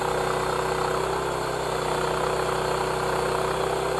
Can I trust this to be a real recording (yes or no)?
yes